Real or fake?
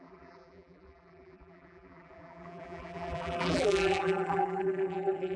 fake